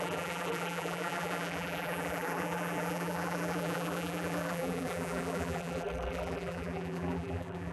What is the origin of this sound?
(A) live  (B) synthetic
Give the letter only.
B